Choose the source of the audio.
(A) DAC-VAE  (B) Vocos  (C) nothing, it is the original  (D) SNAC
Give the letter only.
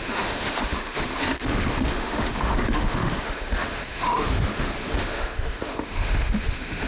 A